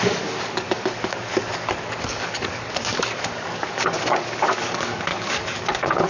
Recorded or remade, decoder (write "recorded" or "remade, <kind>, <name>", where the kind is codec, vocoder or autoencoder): remade, codec, DAC